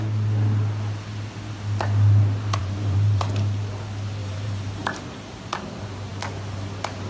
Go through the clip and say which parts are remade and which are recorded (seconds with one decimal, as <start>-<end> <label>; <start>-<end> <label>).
0.0-2.6 recorded; 2.6-3.3 remade; 3.3-4.2 recorded; 4.2-5.4 remade; 5.4-7.1 recorded